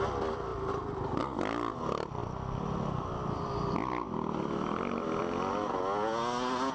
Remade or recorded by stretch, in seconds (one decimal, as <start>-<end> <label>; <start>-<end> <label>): 0.0-6.7 recorded